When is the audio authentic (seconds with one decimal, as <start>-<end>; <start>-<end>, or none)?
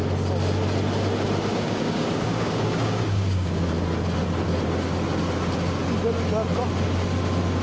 0.0-1.5; 3.7-7.6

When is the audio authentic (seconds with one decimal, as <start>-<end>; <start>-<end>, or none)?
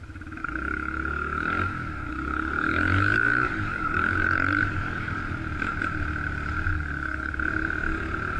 0.0-0.4; 5.2-6.7; 7.3-8.4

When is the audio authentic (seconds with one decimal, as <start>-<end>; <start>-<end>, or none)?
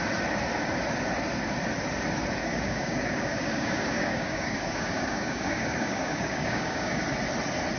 0.0-2.4; 7.0-7.8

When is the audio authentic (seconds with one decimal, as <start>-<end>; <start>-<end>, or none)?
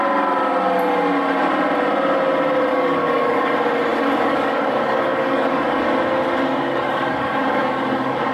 0.0-2.7; 3.5-3.9; 5.9-6.5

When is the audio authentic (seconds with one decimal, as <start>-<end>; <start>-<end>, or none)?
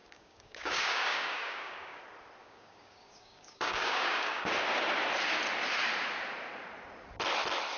2.0-2.4; 4.5-7.8